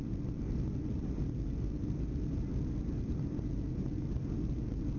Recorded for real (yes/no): yes